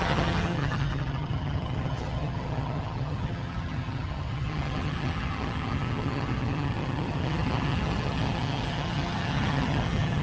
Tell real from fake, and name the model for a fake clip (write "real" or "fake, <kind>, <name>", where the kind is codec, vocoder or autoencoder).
fake, vocoder, HiFi-GAN